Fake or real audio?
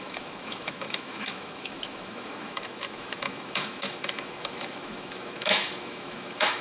fake